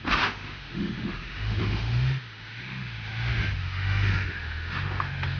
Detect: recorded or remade remade